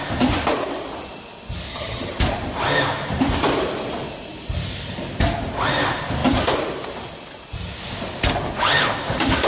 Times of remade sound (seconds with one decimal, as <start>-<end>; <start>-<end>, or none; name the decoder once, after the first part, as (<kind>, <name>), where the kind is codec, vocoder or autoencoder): 1.7-2.2 (vocoder, HiFi-GAN)